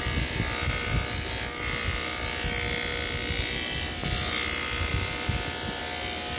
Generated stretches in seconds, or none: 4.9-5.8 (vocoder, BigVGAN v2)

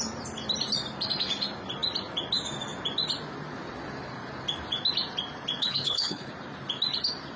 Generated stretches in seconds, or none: 5.6-6.3 (codec, HILCodec)

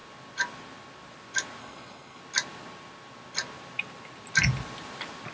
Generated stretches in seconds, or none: 1.6-2.2 (codec, SNAC)